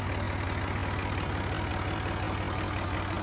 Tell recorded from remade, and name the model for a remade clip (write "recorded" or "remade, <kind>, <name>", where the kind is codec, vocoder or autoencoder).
recorded